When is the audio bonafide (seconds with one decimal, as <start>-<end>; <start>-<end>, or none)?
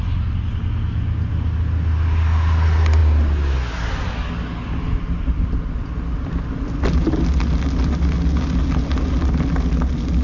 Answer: 0.0-10.2